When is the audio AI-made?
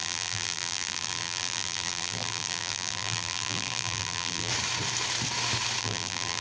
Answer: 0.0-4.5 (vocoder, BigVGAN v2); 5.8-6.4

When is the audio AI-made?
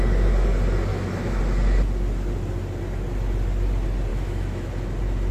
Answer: 0.9-1.4 (autoencoder, DAC-VAE); 4.1-4.7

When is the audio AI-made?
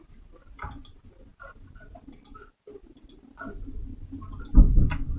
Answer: none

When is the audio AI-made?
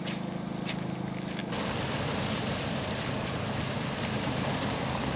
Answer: none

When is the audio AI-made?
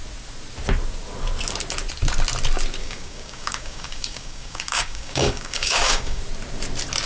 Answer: 2.8-6.2 (codec, DAC)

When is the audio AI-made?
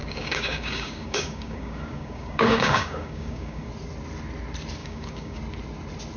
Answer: 0.0-3.7 (codec, DAC); 4.8-5.4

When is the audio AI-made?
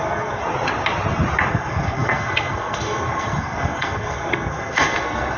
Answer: 0.0-0.4 (codec, SNAC); 1.5-5.4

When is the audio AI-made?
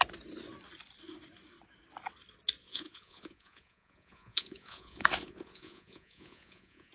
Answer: 2.6-6.9 (vocoder, Vocos)